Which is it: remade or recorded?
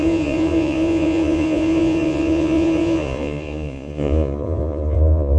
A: remade